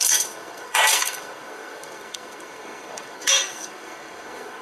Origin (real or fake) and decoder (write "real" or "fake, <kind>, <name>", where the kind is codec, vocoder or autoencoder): fake, codec, SNAC